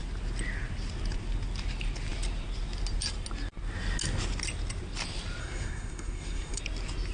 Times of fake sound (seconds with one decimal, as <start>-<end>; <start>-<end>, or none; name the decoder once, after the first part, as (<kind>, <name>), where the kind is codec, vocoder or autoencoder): 5.4-6.6 (codec, SNAC)